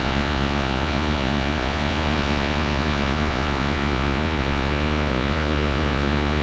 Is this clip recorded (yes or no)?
no